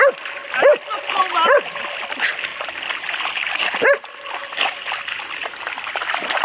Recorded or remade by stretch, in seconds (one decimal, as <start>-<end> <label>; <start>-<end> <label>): 0.0-6.4 recorded